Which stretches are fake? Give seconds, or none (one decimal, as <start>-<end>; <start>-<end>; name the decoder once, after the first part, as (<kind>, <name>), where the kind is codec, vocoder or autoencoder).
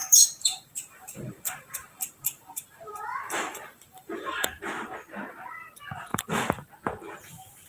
0.0-4.6 (vocoder, BigVGAN v2); 6.1-6.7